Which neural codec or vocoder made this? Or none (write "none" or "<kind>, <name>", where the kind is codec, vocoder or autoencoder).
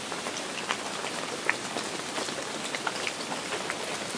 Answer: none